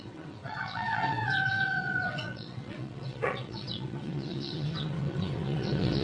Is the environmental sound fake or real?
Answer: fake